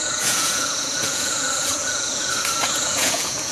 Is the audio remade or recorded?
remade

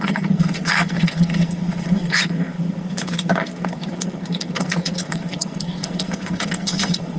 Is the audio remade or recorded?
remade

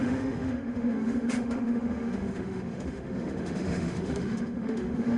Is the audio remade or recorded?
remade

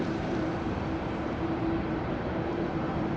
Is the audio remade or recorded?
remade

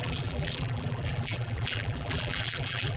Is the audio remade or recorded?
remade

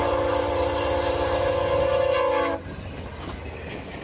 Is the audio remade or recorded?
recorded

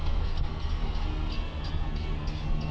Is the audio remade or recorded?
remade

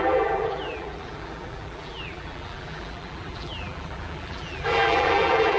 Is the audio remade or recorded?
remade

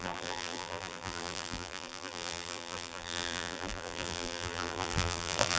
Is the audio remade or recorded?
remade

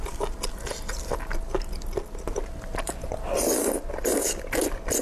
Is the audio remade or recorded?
recorded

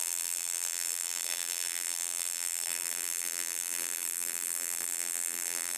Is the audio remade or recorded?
remade